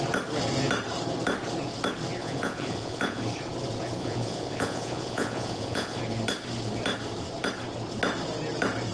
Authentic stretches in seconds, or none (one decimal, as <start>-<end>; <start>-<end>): 0.0-2.2; 3.2-4.0; 6.0-8.9